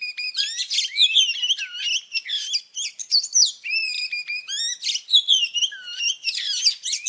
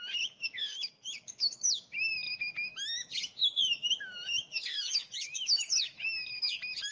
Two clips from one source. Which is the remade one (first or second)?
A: second